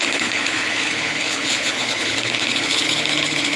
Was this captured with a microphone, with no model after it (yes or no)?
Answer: no